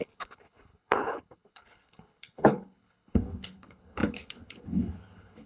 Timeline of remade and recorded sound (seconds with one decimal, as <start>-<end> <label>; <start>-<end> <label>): 0.0-5.5 remade